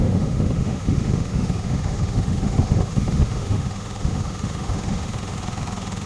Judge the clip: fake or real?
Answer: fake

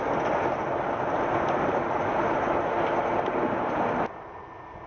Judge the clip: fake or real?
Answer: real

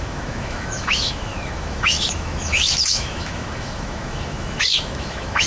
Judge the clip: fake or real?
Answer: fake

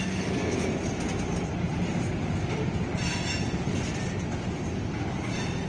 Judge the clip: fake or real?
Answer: real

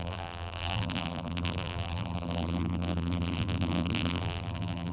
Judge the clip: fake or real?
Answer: fake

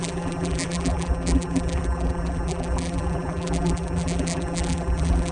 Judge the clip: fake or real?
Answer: fake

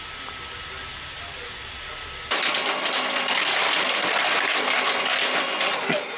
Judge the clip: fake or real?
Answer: real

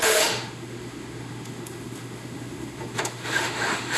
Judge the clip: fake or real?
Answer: fake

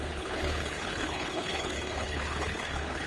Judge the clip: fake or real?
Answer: fake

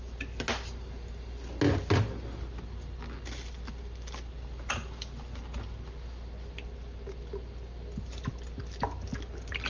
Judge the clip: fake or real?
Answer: real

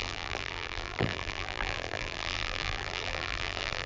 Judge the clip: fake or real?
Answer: fake